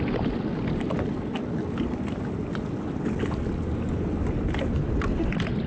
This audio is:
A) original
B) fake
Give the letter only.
A